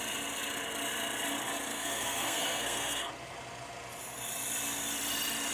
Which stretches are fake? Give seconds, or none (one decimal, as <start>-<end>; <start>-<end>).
1.7-3.1